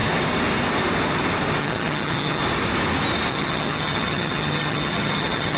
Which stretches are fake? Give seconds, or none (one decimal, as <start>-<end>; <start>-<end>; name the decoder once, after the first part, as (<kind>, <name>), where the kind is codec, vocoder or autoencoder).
1.6-2.4 (vocoder, HiFi-GAN); 3.3-5.6